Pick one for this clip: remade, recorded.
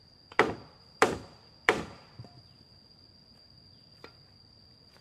remade